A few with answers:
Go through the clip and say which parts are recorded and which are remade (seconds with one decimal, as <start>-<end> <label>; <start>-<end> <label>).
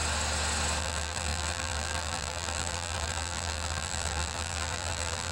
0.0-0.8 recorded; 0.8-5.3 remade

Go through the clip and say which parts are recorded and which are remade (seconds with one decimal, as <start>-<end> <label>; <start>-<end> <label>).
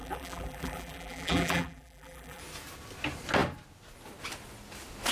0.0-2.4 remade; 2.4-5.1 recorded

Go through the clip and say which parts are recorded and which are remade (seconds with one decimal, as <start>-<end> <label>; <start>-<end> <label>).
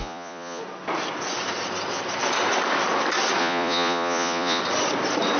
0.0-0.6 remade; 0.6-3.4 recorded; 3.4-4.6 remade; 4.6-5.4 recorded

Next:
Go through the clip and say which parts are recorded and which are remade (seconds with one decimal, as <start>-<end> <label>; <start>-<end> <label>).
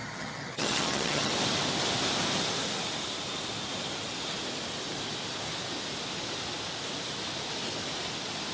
0.0-1.3 remade; 1.3-8.5 recorded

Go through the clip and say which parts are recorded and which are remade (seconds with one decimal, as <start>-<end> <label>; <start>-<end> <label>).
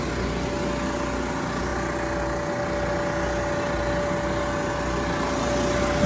0.0-6.1 recorded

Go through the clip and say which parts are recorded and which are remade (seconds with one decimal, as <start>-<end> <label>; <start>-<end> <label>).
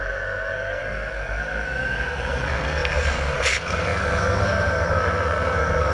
0.0-5.9 remade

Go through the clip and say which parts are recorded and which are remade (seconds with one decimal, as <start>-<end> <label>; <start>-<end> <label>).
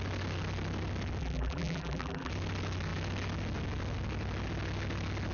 0.0-1.2 recorded; 1.2-2.3 remade; 2.3-5.3 recorded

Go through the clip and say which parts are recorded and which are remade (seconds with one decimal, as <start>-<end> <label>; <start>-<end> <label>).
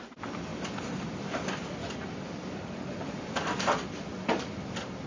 0.0-0.5 recorded; 0.5-3.6 remade; 3.6-4.1 recorded; 4.1-5.1 remade